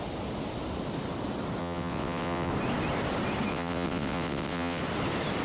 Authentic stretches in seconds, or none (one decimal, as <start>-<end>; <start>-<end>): 0.0-1.6; 2.5-3.5; 4.8-5.4